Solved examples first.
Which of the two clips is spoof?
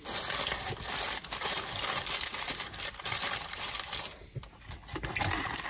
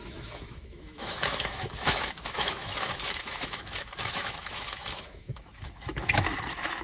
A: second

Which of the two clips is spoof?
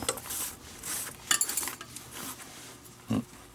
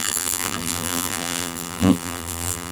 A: second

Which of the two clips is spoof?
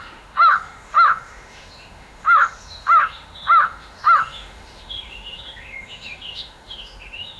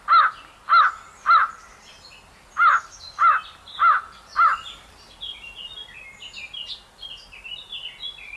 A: first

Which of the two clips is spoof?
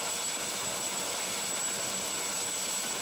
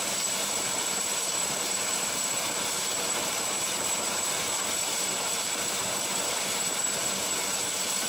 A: second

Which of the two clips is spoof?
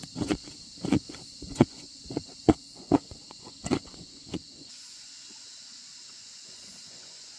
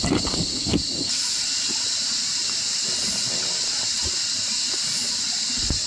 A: first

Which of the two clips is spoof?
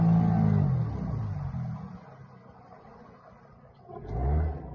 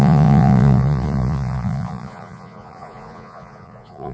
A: second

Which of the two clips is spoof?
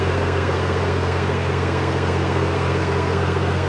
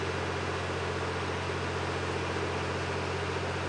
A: first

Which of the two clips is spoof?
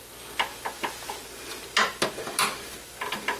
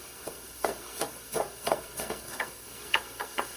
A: second